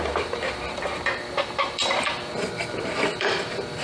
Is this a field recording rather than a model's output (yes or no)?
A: no